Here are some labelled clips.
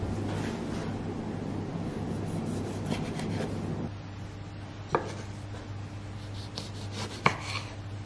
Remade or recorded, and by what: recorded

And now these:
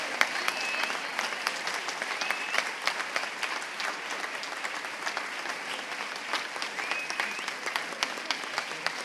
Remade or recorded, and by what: recorded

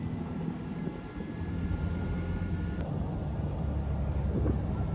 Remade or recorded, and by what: recorded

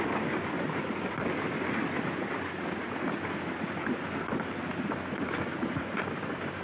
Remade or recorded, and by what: recorded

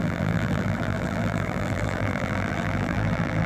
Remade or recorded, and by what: remade, vocoder, BigVGAN v2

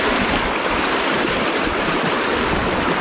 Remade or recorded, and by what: remade, vocoder, BigVGAN v2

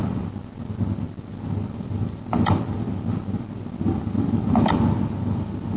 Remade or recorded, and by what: recorded